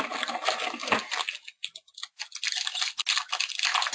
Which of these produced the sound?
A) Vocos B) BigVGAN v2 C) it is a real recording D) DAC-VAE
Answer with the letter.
C